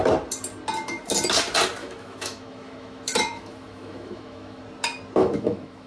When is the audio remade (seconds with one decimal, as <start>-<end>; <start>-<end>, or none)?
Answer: 1.8-4.6; 5.2-5.9

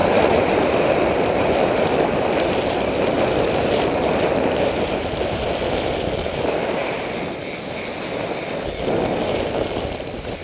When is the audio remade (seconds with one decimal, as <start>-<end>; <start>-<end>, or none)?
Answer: 0.0-0.6

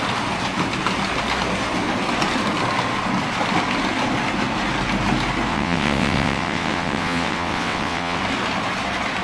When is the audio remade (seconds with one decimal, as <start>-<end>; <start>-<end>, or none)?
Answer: 5.5-8.2

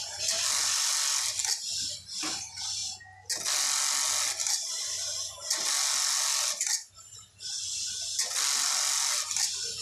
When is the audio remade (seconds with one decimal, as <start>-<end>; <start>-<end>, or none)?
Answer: none

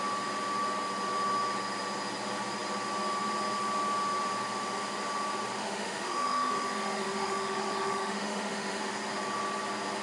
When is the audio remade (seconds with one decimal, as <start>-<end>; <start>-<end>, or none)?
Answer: 5.6-8.8

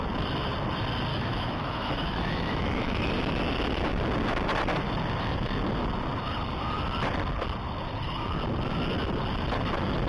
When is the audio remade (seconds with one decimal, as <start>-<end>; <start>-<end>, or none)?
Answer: 1.1-3.1